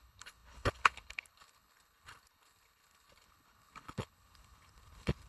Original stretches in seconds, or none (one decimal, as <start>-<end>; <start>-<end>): none